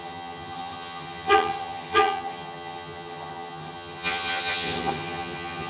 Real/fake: fake